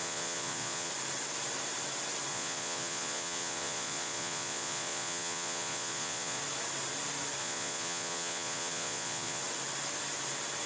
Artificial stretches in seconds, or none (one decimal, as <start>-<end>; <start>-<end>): 0.0-0.9; 2.3-6.4; 7.4-9.4